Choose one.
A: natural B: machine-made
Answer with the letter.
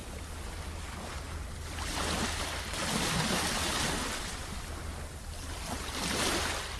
A